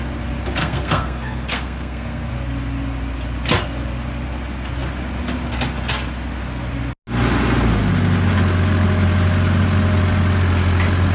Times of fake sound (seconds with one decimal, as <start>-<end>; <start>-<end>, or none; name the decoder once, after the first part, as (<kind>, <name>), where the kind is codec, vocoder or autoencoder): 0.6-2.3 (codec, SNAC)